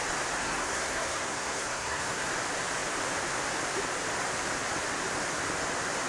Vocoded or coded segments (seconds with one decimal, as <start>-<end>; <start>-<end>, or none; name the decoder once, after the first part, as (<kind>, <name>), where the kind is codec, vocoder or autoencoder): 0.4-2.3 (codec, SNAC)